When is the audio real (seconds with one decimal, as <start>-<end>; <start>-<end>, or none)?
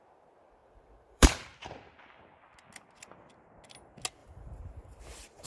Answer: 0.0-0.6; 2.2-4.2; 5.0-5.5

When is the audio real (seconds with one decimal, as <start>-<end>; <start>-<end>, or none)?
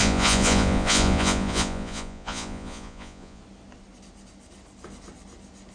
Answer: 3.4-5.7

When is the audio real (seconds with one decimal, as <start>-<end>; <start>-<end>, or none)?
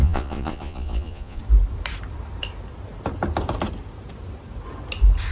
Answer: 1.4-5.3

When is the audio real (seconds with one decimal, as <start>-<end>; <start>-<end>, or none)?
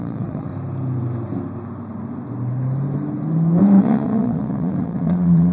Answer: 0.5-3.8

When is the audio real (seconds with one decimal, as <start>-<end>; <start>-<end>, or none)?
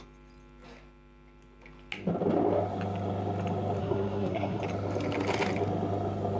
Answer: 0.0-3.8; 4.6-6.4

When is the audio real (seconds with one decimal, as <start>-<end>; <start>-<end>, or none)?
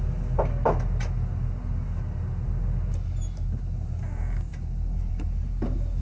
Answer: 0.0-6.0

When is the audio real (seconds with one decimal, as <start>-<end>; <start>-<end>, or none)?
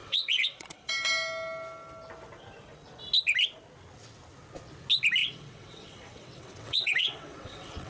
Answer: 0.9-5.2